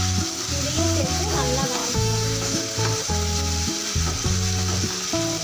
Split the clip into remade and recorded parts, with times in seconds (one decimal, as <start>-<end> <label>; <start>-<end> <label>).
0.0-1.8 recorded; 1.8-2.6 remade; 2.6-5.4 recorded